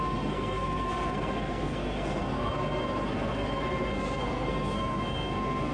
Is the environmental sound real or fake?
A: fake